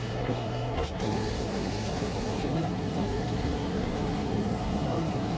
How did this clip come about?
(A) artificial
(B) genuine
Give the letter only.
A